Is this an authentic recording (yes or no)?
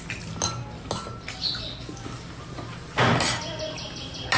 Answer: yes